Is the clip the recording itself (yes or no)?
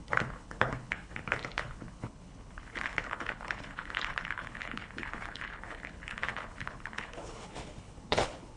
no